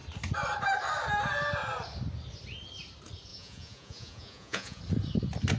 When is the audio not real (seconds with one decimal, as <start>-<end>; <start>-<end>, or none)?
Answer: 3.3-4.8